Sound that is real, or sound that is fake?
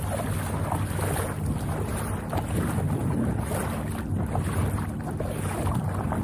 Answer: real